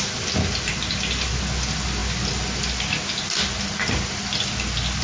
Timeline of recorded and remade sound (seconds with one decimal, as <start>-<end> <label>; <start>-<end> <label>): 0.0-5.0 recorded